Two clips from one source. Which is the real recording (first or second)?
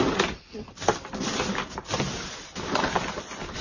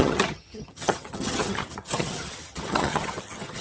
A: first